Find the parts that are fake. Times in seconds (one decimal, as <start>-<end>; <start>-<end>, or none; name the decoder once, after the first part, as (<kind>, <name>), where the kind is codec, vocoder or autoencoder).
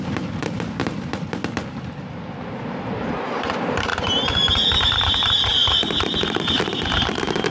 0.0-1.4 (vocoder, BigVGAN v2); 2.8-3.9; 4.8-7.5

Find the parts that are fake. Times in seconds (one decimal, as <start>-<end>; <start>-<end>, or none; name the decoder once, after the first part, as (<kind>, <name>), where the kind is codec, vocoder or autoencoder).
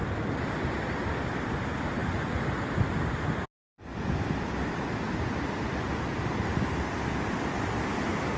none